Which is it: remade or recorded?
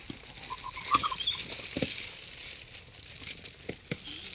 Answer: recorded